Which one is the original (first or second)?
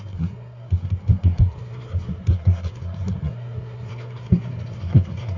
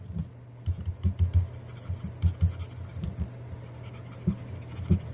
second